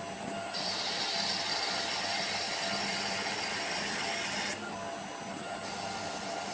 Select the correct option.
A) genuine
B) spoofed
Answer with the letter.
A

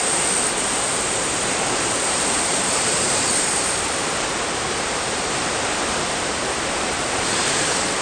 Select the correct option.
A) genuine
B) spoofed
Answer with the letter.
B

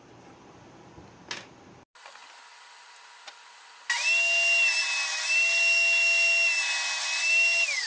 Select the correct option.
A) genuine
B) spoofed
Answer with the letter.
A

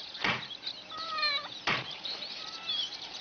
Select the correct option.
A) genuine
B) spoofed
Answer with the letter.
A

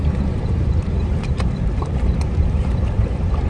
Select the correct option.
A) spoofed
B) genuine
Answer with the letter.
A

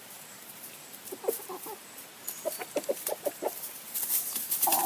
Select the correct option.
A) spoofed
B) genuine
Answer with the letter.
A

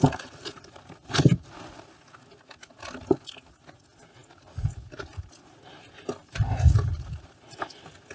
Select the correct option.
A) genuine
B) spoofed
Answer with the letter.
A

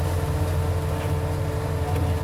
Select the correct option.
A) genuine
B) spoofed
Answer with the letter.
A